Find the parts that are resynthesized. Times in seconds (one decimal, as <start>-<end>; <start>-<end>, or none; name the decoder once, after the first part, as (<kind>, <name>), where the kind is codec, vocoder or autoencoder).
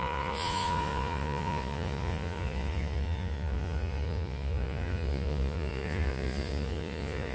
0.0-7.3 (vocoder, Vocos)